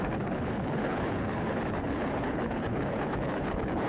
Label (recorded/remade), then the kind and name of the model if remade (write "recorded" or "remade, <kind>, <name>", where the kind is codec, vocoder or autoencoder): remade, codec, HILCodec